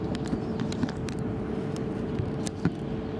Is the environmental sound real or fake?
real